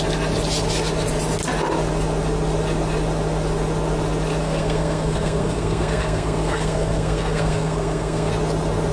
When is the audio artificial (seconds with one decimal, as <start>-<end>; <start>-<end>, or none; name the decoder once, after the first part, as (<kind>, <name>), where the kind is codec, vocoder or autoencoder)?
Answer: 4.4-8.3 (codec, SNAC)